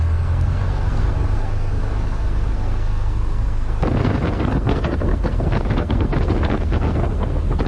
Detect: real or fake fake